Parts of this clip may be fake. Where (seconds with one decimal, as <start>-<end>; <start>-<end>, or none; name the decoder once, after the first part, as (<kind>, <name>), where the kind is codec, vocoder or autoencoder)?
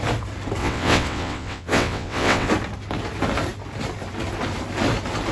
0.6-2.5 (vocoder, WaveNeXt)